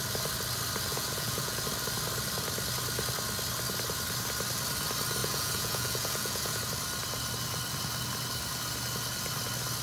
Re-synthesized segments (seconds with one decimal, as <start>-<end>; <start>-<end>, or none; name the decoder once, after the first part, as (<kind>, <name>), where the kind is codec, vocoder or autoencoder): 0.9-1.6 (vocoder, Vocos); 5.2-6.6